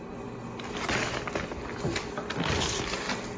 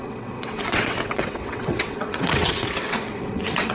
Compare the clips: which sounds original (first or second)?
first